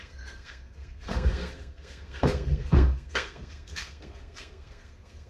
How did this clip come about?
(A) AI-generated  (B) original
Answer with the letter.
A